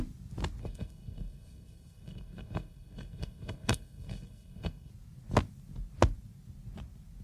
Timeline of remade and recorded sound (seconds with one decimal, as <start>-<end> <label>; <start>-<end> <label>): 0.0-0.6 recorded; 0.6-4.9 remade; 4.9-7.2 recorded